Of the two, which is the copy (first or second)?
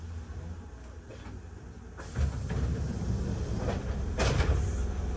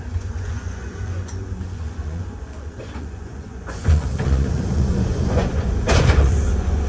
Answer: second